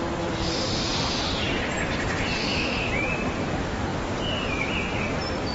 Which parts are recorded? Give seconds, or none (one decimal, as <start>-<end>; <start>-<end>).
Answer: 0.0-2.4; 2.9-5.5